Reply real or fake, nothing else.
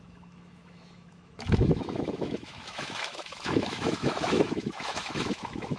fake